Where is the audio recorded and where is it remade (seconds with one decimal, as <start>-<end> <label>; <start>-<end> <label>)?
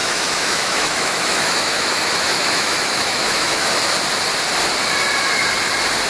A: 0.0-3.7 remade; 3.7-6.1 recorded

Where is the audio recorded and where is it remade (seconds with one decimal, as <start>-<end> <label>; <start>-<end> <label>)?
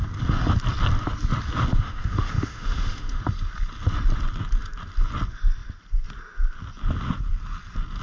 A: 0.0-1.7 recorded; 1.7-3.2 remade; 3.2-8.0 recorded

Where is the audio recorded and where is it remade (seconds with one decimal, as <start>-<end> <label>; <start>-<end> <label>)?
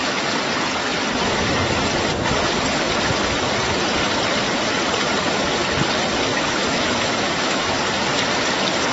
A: 0.0-6.3 recorded; 6.3-7.7 remade; 7.7-8.9 recorded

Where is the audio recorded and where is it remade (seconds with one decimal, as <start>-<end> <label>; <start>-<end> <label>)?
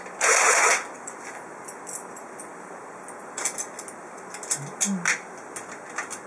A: 0.0-6.3 recorded